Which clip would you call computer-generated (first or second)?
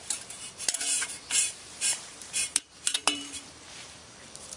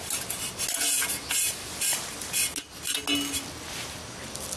first